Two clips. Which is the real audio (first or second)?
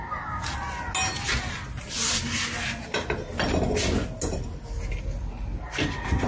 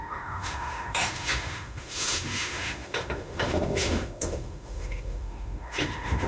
first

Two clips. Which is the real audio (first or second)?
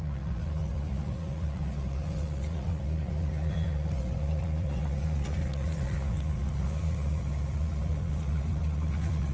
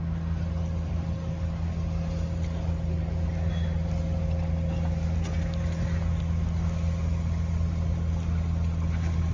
second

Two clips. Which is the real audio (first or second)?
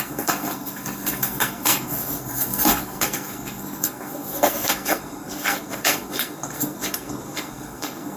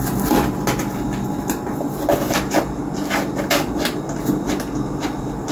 second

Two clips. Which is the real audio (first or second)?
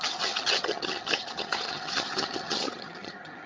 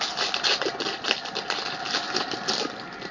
second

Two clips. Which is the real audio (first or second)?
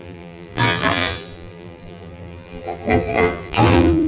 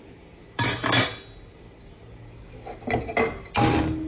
second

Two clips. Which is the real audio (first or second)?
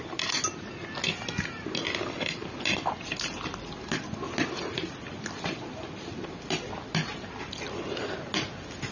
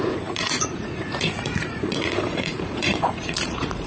first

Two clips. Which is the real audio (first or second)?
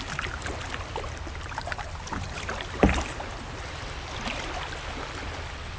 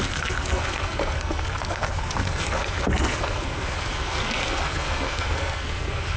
first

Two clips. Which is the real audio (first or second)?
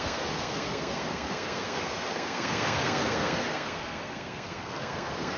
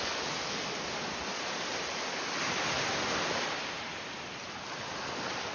second